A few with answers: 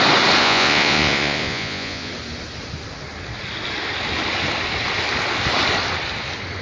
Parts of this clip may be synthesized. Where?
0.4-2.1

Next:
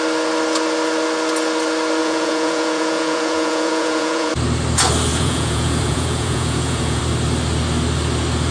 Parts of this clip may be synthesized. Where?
2.0-4.3; 5.1-7.0

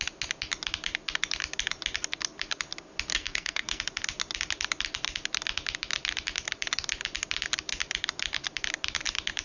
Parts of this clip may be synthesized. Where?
3.1-3.8

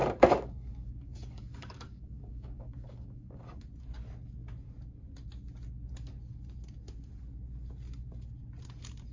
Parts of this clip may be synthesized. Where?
0.0-3.4

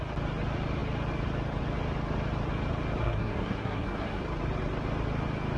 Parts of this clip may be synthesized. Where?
3.0-4.2